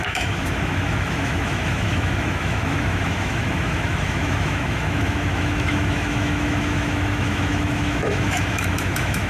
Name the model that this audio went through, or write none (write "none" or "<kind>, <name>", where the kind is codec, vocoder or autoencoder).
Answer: autoencoder, DAC-VAE